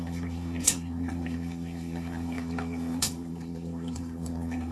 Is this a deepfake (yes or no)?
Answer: yes